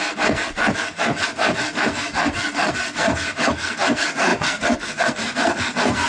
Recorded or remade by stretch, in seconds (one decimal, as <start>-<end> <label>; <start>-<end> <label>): 0.0-6.1 remade